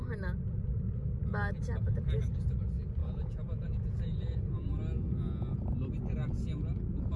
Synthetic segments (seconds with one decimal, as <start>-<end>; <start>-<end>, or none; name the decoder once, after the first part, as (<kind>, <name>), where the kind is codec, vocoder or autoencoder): 3.0-4.5 (vocoder, Vocos)